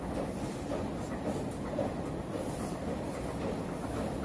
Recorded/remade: recorded